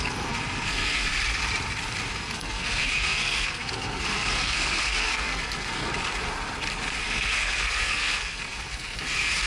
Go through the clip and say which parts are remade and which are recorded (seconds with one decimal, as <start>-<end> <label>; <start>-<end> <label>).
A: 0.0-1.1 remade; 1.1-2.1 recorded; 2.1-5.9 remade; 5.9-7.0 recorded; 7.0-9.5 remade